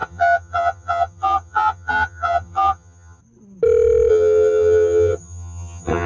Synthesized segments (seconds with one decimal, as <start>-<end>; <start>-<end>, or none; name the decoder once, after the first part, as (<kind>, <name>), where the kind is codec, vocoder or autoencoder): 0.0-3.2 (vocoder, HiFi-GAN); 4.1-6.1